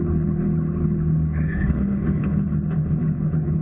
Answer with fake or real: fake